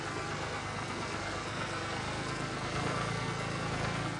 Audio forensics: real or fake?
fake